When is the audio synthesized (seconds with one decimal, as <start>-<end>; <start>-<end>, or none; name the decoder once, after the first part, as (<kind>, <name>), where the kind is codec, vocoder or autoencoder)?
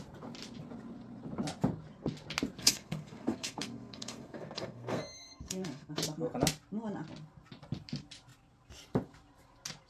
2.6-6.0 (codec, SNAC)